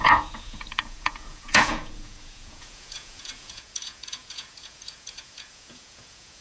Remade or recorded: remade